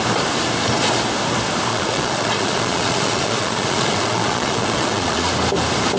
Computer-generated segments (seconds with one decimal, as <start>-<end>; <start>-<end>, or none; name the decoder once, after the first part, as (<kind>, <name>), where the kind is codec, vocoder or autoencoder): 1.7-5.3 (vocoder, Vocos)